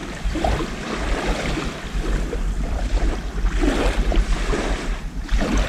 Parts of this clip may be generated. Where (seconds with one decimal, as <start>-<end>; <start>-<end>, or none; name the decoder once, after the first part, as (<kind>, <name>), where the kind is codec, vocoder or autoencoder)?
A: 0.0-3.4 (vocoder, BigVGAN v2); 4.1-5.7